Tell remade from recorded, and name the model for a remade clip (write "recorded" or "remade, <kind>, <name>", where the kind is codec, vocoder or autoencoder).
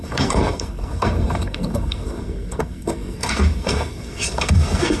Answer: remade, codec, SNAC